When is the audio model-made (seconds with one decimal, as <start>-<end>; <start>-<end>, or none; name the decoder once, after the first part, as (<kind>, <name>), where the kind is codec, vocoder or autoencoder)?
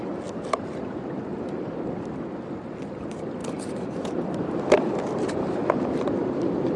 0.0-0.6 (vocoder, BigVGAN v2); 1.3-1.8; 3.4-6.8